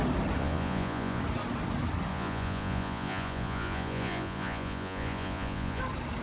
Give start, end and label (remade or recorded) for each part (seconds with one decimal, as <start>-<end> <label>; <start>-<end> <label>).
0.0-0.4 recorded; 0.4-1.2 remade; 1.2-2.1 recorded; 2.1-5.8 remade; 5.8-6.2 recorded